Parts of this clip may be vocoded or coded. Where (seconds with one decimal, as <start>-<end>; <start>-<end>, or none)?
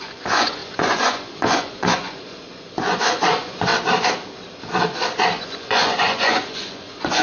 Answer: 0.0-3.7; 5.4-7.2